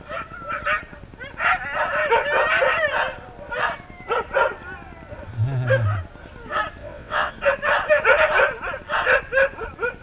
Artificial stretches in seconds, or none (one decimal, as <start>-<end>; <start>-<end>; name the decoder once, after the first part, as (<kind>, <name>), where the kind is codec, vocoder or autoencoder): 6.8-7.3 (vocoder, WaveNeXt)